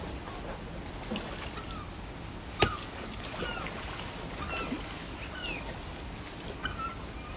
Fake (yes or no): no